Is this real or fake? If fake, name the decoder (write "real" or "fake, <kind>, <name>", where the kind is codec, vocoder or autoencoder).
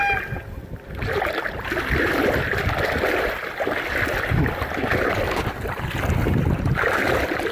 real